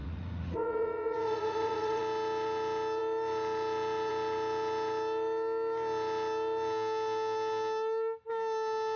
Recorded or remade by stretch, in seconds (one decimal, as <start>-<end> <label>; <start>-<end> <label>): 0.0-2.0 remade; 2.0-9.0 recorded